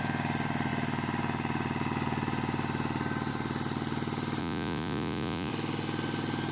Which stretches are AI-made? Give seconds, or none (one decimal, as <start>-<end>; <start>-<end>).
4.4-5.5